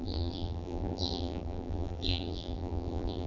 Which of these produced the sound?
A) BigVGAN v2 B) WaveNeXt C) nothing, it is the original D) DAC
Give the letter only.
A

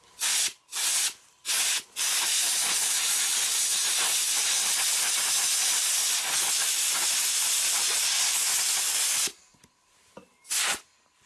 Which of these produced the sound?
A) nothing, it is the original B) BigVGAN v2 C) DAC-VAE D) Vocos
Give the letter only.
B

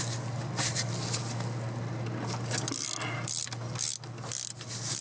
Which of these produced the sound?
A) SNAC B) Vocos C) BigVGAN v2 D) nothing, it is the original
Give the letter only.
D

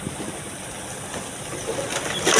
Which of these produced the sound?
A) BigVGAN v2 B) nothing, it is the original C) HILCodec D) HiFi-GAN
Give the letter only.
B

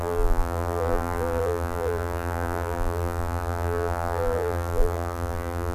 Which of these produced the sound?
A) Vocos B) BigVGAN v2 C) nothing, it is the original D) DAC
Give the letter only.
B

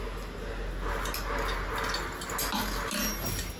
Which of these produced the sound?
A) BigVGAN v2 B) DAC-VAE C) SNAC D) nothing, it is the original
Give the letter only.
D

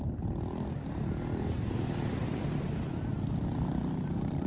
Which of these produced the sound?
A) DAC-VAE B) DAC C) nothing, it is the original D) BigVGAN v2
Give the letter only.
D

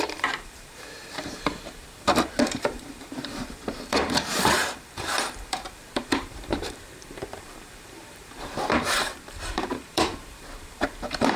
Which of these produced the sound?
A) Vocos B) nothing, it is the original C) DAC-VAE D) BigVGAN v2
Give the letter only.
D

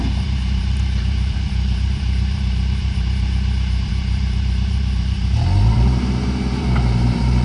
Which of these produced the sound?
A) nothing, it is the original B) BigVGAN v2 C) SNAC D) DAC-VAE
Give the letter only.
B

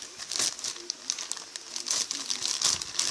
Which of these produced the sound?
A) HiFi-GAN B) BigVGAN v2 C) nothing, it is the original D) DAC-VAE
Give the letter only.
C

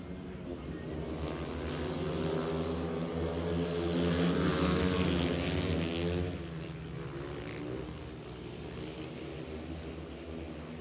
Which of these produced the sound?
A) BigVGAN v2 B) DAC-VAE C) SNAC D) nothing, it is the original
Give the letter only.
D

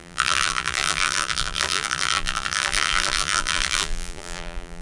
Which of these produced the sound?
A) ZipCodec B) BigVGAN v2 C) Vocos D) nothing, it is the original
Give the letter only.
B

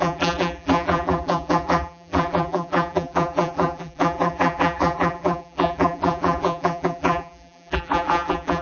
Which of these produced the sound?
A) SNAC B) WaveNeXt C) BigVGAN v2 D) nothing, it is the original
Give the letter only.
C